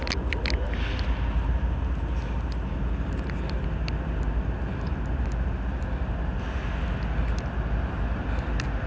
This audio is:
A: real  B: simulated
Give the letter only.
A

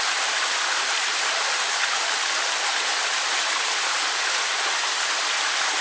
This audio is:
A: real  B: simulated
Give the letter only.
A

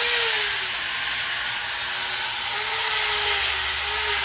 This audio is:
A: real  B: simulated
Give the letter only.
A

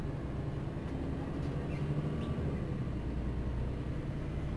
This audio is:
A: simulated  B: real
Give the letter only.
B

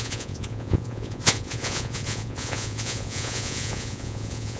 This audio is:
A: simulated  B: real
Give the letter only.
A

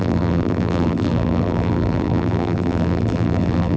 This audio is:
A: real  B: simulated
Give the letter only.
B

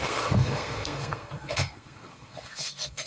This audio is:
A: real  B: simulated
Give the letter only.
B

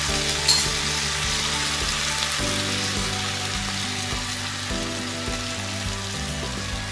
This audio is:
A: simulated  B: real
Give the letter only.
B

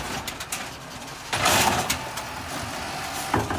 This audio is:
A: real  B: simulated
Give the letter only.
A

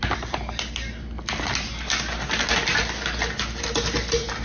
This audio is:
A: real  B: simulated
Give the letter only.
A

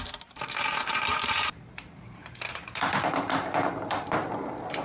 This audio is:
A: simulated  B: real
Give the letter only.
A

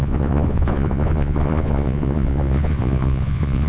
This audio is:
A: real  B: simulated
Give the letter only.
B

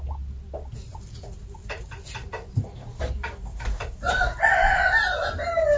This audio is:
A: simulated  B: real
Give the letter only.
B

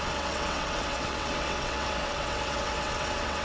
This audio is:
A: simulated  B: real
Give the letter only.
A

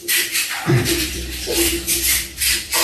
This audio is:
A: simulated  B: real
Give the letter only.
A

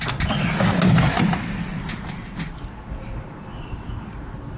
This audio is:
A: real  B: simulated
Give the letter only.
A